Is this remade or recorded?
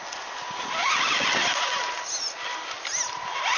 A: recorded